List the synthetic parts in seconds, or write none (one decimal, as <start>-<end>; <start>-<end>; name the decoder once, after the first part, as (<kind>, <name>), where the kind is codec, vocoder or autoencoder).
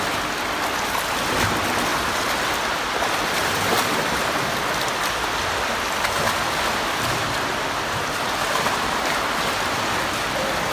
none